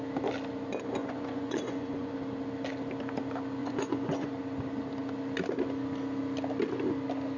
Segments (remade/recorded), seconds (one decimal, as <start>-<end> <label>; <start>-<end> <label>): 0.0-1.0 recorded; 1.0-2.1 remade; 2.1-3.6 recorded; 3.6-4.3 remade; 4.3-7.4 recorded